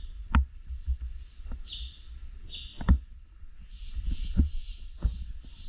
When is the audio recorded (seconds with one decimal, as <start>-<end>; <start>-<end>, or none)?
0.0-5.7